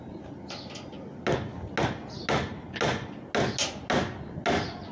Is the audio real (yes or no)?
yes